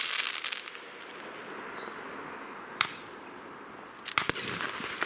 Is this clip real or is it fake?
real